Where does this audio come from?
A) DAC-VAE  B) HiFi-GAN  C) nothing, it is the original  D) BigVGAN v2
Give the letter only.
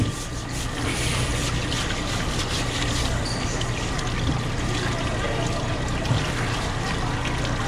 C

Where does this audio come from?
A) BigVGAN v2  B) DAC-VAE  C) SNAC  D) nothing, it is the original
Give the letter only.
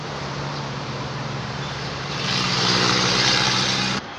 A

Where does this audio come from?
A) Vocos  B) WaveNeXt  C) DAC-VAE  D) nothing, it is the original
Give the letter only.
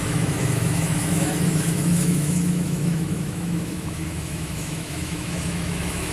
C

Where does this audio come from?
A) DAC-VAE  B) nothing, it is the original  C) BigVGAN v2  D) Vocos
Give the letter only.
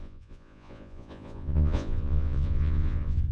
D